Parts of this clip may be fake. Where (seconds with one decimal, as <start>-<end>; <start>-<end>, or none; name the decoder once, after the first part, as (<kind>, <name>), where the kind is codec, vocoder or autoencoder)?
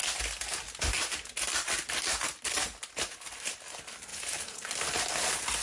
4.1-4.7 (vocoder, Vocos)